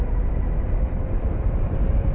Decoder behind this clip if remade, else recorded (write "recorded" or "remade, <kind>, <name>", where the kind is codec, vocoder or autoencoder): recorded